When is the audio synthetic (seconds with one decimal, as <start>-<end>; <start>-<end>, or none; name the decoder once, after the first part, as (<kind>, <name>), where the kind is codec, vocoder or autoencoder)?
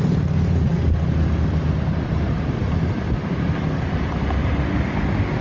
none